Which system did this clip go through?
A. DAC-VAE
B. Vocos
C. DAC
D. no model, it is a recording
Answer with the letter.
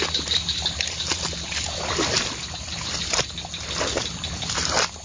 D